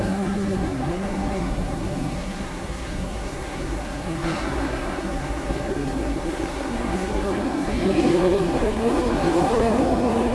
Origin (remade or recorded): remade